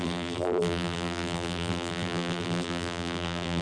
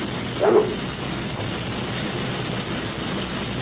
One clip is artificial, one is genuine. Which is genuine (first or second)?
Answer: second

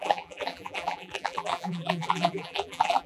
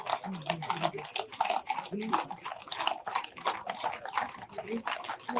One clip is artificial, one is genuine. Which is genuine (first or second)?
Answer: second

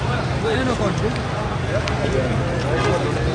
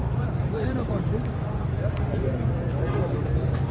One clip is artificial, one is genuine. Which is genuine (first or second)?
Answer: first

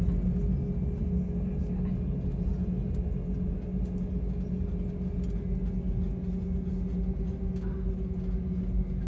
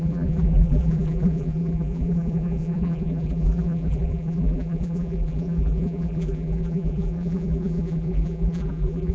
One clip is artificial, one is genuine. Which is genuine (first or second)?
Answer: first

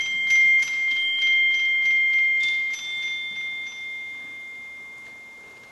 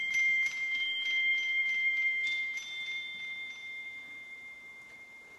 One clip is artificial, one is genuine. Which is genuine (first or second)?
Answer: first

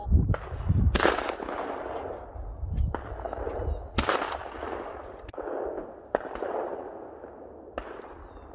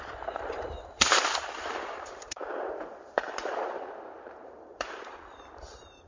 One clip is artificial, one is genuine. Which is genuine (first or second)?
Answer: first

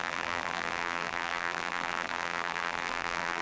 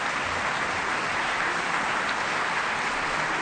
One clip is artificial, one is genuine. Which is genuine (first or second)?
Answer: second